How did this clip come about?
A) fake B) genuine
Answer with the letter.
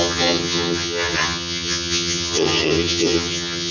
A